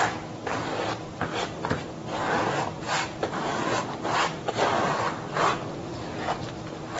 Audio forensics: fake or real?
real